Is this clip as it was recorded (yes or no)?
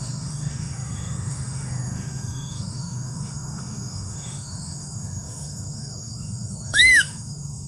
no